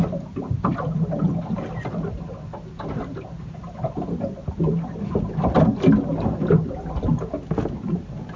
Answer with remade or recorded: recorded